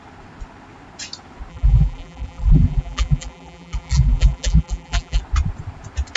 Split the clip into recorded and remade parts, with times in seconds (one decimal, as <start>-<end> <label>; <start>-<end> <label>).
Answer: 0.0-1.5 recorded; 1.5-5.2 remade; 5.2-6.2 recorded